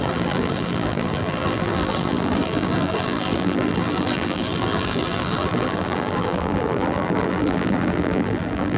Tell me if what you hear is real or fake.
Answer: fake